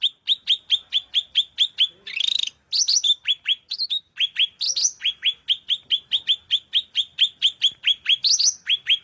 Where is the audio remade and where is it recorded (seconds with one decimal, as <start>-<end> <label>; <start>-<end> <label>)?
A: 0.0-9.0 recorded